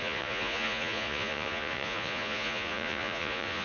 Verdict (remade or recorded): remade